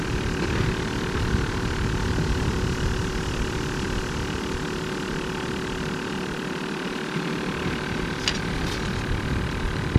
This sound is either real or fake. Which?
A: real